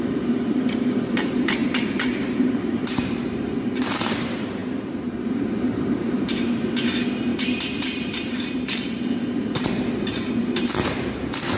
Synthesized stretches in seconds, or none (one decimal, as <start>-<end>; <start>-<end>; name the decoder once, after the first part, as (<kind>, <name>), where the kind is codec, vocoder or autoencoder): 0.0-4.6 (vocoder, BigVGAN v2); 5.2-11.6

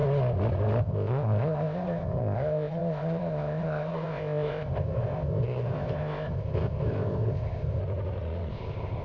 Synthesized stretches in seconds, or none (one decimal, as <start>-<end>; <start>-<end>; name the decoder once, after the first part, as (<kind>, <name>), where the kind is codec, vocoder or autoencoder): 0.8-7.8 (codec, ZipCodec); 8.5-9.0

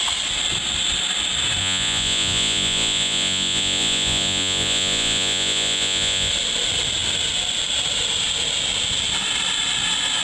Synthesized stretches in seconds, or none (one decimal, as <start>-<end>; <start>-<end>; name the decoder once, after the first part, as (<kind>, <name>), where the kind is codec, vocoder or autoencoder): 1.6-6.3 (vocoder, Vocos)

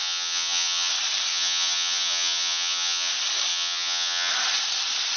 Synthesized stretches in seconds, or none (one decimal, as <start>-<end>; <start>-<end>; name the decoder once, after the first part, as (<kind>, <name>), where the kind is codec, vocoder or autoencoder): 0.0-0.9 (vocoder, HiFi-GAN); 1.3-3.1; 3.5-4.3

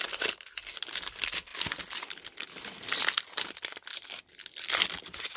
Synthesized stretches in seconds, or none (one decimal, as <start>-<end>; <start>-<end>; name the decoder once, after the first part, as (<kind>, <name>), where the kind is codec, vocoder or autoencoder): none